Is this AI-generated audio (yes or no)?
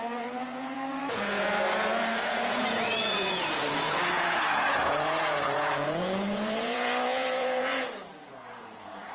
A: yes